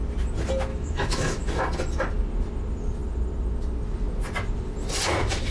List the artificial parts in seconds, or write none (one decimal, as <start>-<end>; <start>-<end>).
0.7-1.5